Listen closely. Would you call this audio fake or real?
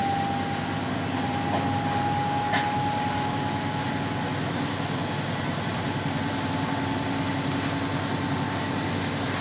real